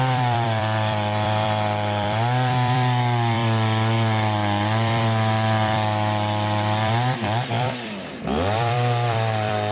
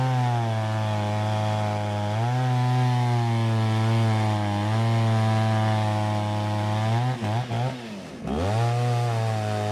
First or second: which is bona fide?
second